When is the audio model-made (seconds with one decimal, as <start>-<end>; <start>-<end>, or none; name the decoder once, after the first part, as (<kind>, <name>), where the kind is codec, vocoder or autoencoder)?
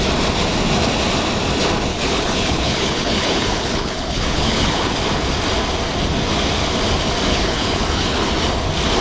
1.9-4.9 (codec, HILCodec); 7.3-8.3